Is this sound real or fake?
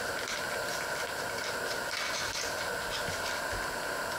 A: real